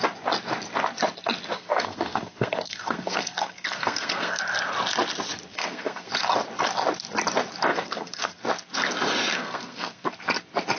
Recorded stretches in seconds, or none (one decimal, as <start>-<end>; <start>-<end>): 0.0-1.5; 4.4-5.5; 6.1-7.7; 8.4-9.3; 10.1-10.8